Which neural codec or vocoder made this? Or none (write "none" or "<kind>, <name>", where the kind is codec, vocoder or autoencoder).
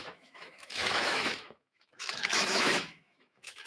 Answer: autoencoder, DAC-VAE